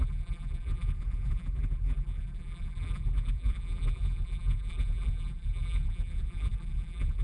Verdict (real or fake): fake